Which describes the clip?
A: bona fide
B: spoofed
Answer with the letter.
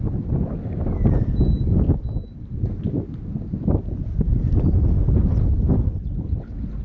A